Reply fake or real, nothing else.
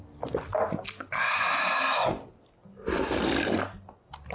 real